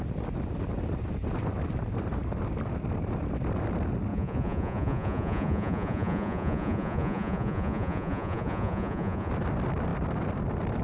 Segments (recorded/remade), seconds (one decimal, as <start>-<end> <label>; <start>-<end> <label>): 0.0-4.1 recorded; 4.1-9.3 remade; 9.3-10.8 recorded